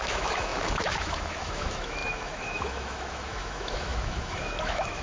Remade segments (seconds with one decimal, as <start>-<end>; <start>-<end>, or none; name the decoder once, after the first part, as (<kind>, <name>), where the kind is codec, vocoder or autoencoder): 0.0-5.0 (autoencoder, DAC-VAE)